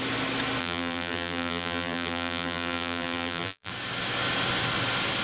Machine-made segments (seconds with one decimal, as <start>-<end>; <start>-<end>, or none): 0.6-3.7